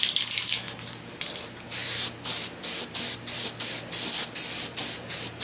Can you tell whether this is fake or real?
real